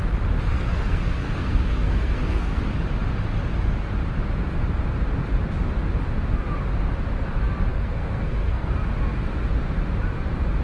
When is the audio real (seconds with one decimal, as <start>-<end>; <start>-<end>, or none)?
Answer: 0.0-0.5; 2.6-7.7; 8.7-10.6